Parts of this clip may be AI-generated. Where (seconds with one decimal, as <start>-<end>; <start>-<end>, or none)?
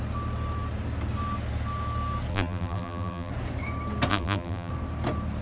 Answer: 2.3-3.3; 4.1-4.7